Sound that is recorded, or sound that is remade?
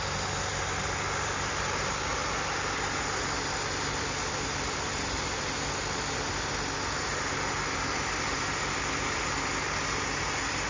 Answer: recorded